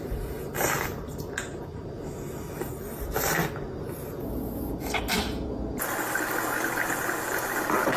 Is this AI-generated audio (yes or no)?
no